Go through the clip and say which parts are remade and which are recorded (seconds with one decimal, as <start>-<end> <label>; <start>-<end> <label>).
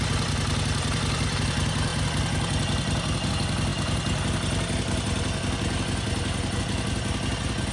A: 0.0-7.7 recorded